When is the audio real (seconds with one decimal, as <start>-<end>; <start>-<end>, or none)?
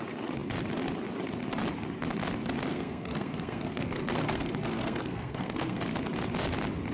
0.0-2.7; 5.8-6.9